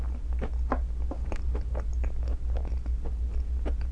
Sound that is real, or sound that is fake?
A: real